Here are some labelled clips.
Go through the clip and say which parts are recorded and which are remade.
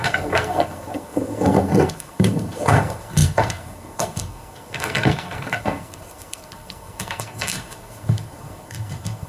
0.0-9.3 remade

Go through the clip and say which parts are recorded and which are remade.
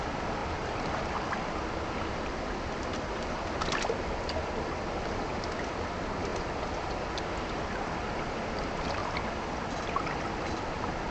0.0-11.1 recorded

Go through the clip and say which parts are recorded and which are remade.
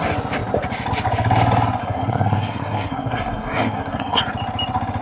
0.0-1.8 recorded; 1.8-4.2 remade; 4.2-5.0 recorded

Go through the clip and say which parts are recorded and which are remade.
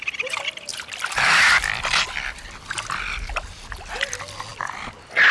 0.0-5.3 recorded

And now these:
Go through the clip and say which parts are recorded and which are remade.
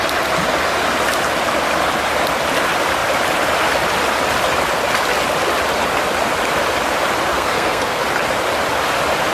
0.0-7.3 recorded; 7.3-8.0 remade; 8.0-9.3 recorded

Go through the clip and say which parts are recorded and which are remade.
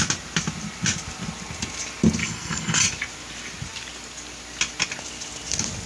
0.0-2.2 recorded; 2.2-2.8 remade; 2.8-5.9 recorded